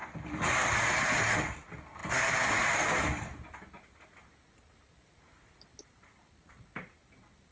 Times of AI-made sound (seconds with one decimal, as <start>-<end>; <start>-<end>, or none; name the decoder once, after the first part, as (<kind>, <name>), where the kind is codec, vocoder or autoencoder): none